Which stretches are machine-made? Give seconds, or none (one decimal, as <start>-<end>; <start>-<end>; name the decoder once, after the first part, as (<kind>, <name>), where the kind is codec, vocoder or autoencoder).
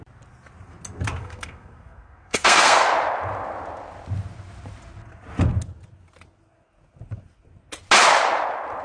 1.2-2.9 (codec, SNAC)